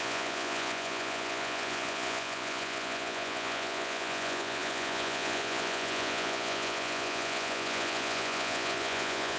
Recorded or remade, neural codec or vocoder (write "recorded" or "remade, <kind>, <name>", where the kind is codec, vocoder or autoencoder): remade, vocoder, Vocos